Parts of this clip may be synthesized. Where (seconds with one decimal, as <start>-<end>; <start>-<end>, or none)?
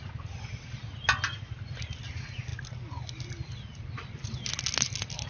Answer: none